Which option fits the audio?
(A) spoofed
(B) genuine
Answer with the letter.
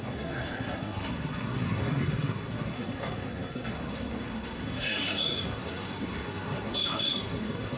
A